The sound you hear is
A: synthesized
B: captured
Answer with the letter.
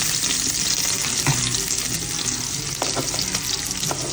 B